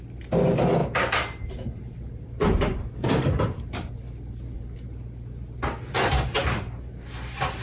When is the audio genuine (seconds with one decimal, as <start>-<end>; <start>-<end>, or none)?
0.0-0.8; 3.9-7.6